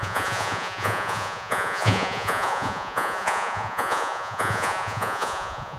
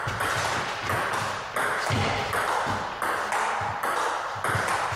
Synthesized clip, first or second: first